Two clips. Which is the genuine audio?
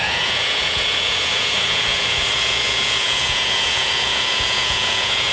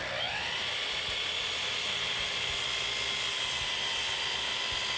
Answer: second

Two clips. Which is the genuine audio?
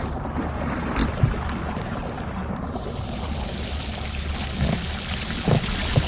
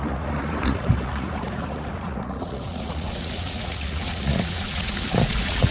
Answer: first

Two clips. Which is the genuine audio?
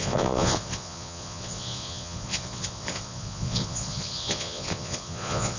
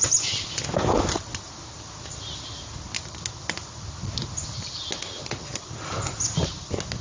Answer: second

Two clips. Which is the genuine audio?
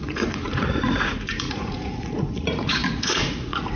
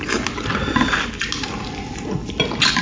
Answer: second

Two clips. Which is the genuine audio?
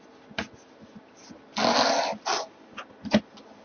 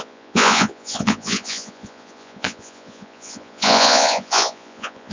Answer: first